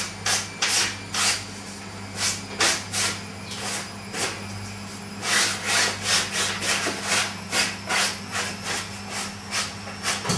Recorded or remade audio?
recorded